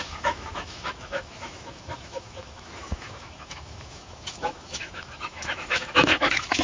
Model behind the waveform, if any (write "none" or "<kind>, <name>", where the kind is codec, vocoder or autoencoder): autoencoder, DAC-VAE